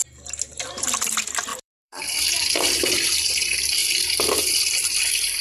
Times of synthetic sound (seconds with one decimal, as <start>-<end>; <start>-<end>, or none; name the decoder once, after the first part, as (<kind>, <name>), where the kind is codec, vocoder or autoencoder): 1.5-2.3 (vocoder, BigVGAN v2); 3.8-4.5